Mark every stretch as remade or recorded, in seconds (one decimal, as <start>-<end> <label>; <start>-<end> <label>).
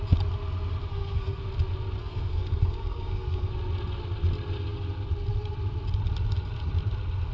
0.0-0.9 recorded; 0.9-1.4 remade; 1.4-2.0 recorded; 2.0-3.5 remade; 3.5-7.3 recorded